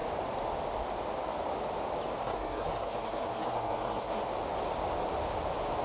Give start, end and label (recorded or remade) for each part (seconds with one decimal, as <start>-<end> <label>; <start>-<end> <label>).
0.0-2.2 recorded; 2.2-4.2 remade; 4.2-5.8 recorded